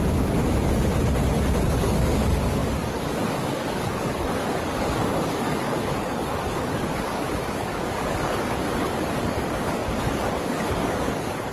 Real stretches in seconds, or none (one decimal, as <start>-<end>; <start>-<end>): 0.4-1.7

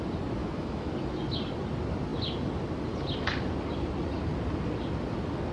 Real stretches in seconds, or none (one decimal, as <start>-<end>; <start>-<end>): 0.0-0.4; 0.9-5.5

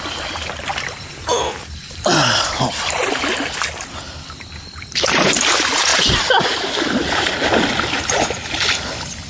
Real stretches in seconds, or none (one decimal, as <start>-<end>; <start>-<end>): 0.0-1.4; 3.0-5.9; 7.6-9.3

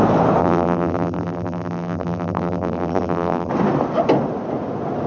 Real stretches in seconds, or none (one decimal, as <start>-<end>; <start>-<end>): 0.0-0.4; 3.5-5.1

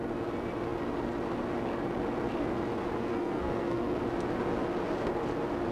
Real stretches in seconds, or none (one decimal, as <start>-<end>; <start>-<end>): 0.0-3.1; 4.0-5.7

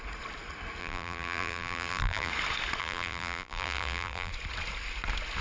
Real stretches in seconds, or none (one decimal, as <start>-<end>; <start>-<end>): 0.0-0.8; 2.3-2.8; 4.3-5.4

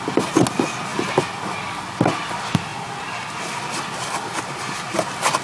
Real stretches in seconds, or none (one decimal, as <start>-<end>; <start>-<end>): 0.0-5.4

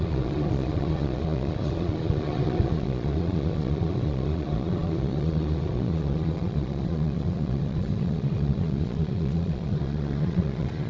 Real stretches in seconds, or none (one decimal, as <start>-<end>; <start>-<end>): none